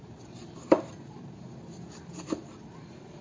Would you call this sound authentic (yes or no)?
no